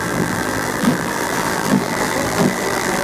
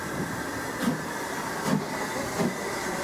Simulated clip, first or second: first